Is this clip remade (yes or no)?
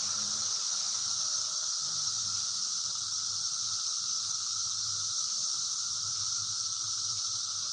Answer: yes